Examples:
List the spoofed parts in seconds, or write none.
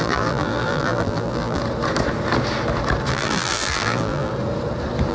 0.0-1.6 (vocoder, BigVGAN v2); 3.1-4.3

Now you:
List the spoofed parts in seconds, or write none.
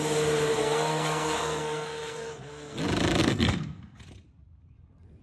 0.6-2.8 (codec, SNAC); 3.2-4.0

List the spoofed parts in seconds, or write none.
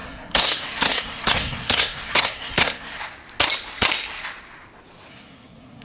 0.0-3.0 (codec, SNAC); 5.1-5.8